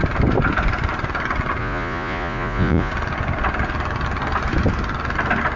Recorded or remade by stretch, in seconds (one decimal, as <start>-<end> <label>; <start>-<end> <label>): 0.0-1.6 recorded; 1.6-2.9 remade; 2.9-5.6 recorded